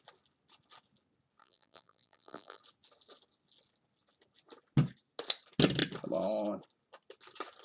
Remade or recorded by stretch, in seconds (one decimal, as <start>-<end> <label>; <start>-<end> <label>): 0.0-1.4 recorded; 1.4-2.6 remade; 2.6-7.6 recorded